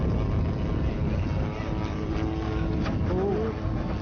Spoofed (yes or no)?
no